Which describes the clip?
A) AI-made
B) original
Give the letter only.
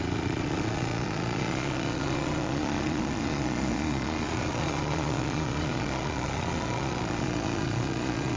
A